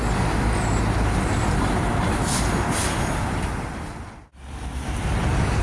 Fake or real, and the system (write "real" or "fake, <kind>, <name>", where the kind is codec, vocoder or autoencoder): real